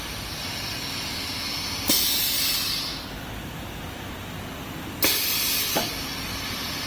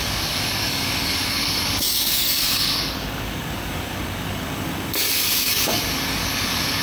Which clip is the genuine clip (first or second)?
first